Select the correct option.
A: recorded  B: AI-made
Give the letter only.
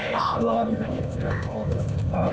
B